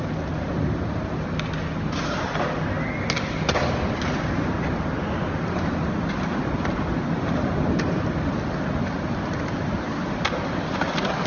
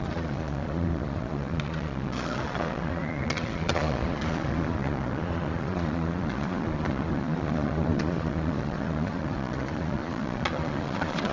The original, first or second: first